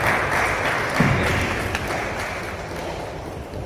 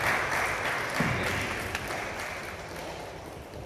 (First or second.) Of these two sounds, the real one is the first